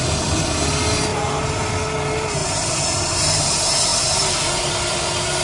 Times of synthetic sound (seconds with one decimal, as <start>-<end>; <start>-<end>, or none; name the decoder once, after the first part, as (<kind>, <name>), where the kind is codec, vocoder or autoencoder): 1.1-1.7 (vocoder, BigVGAN v2); 2.4-3.5